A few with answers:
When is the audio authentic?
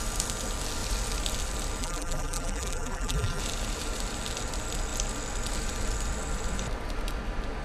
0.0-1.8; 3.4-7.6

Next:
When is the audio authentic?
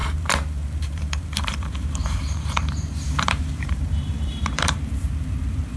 none